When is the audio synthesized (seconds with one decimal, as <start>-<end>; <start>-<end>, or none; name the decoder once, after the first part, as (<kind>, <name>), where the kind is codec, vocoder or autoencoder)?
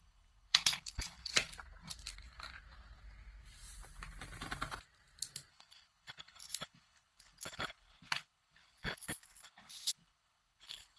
0.0-1.3 (codec, HILCodec); 5.5-11.0